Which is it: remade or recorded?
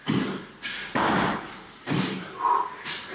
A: recorded